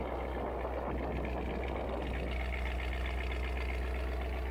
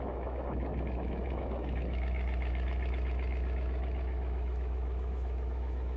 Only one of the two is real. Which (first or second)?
first